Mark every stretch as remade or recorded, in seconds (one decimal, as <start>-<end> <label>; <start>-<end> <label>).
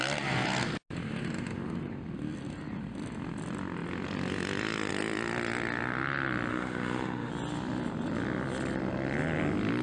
0.0-6.5 recorded; 6.5-7.3 remade; 7.3-9.8 recorded